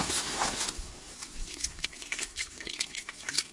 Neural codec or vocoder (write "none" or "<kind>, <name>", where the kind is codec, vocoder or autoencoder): codec, SNAC